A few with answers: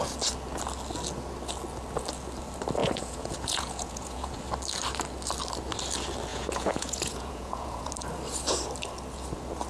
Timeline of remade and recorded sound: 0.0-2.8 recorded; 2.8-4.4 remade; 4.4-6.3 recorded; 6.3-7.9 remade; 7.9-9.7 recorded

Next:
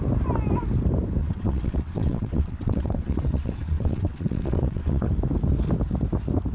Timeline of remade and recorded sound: 0.0-1.2 recorded; 1.2-5.1 remade; 5.1-6.5 recorded

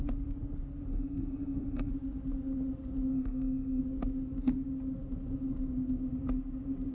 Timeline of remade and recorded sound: 0.0-0.9 recorded; 0.9-1.9 remade; 1.9-3.1 recorded; 3.1-3.8 remade; 3.8-6.9 recorded

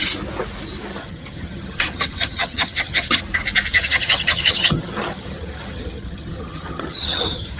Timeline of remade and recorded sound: 0.0-0.9 recorded; 0.9-3.2 remade; 3.2-3.7 recorded; 3.7-7.6 remade

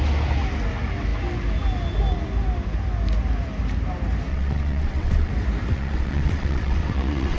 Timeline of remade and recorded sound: 0.0-4.3 recorded; 4.3-5.3 remade; 5.3-5.7 recorded; 5.7-7.4 remade

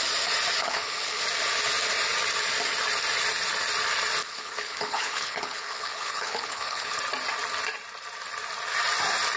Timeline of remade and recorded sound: 0.0-0.6 recorded; 0.6-1.2 remade; 1.2-4.2 recorded; 4.2-7.0 remade; 7.0-9.4 recorded

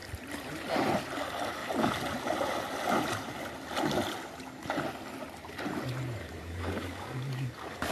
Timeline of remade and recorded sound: 0.0-6.2 recorded; 6.2-7.9 remade